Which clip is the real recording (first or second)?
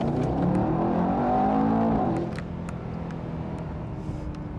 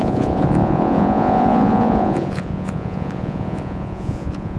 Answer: first